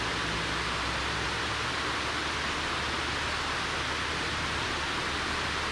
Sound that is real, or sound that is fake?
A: real